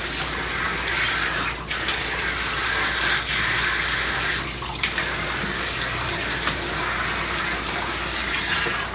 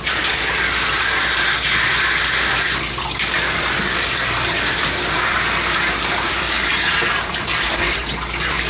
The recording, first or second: first